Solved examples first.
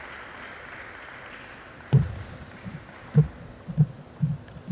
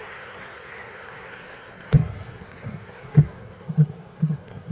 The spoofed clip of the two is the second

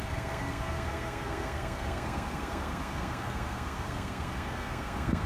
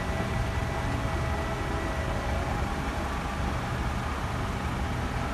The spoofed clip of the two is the first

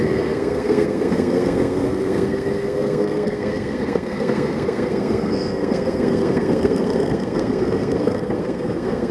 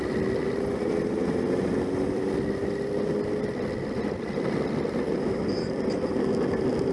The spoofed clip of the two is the first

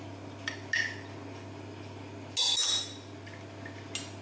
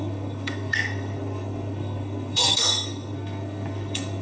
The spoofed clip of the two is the second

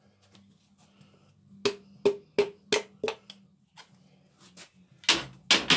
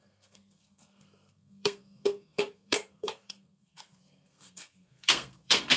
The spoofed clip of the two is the second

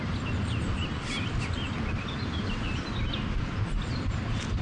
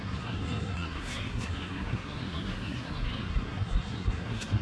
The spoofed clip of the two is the second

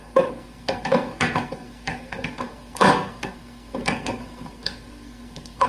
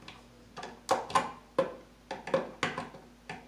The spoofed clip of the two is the first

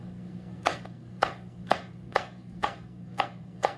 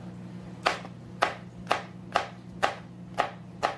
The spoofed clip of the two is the first